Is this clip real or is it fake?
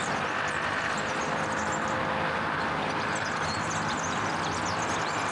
fake